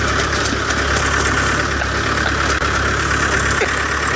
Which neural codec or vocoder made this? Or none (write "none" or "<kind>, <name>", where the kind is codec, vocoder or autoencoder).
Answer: none